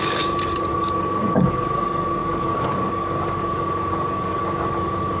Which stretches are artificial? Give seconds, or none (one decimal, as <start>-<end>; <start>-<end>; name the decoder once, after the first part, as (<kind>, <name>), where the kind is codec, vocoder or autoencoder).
0.0-5.2 (codec, DAC)